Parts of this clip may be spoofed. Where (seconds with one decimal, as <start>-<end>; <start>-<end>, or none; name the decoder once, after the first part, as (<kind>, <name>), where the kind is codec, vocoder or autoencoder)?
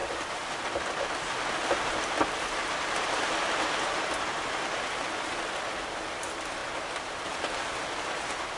2.6-3.6 (vocoder, BigVGAN v2); 6.6-7.6